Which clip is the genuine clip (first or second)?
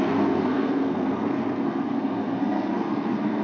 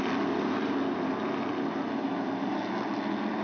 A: second